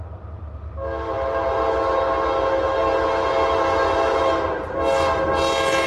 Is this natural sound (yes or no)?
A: yes